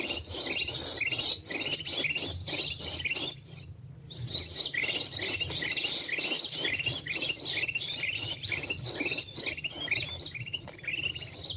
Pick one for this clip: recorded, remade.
recorded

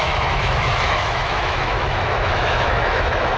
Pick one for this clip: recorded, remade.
remade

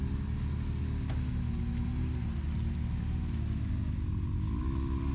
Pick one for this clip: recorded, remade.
recorded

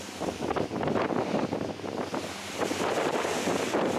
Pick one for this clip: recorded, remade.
recorded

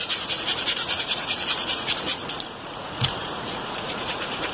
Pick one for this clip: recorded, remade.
remade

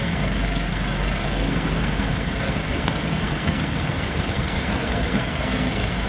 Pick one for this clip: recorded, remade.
remade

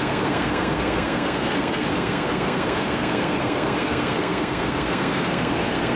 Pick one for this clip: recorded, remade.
remade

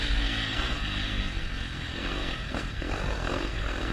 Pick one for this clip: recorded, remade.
remade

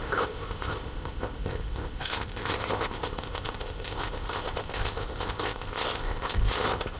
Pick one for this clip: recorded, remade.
remade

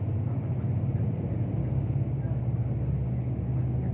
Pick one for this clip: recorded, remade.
recorded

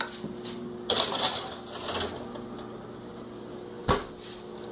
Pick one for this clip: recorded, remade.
recorded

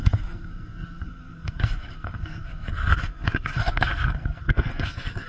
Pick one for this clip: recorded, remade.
remade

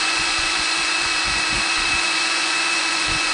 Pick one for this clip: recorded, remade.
remade